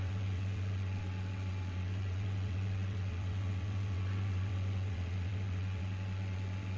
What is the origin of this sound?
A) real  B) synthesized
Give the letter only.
B